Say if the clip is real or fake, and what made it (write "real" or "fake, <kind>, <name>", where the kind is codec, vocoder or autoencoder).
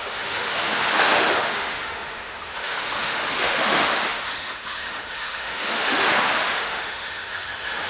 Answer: fake, autoencoder, DAC-VAE